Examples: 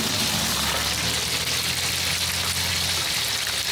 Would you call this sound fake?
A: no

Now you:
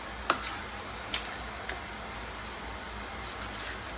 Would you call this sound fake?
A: no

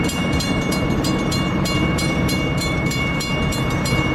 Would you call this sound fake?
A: yes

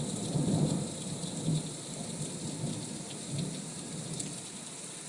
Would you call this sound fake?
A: yes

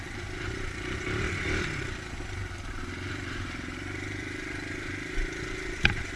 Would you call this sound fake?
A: yes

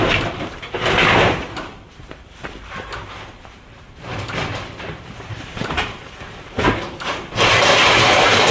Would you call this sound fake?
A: yes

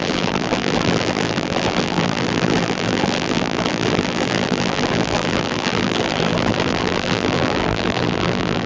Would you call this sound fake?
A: yes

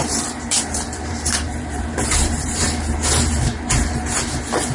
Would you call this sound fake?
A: yes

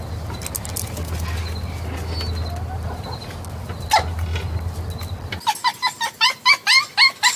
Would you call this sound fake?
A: no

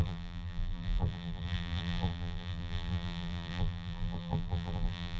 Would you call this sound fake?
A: yes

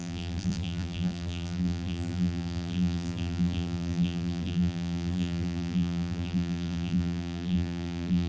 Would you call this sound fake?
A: yes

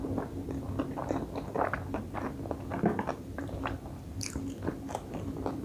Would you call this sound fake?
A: no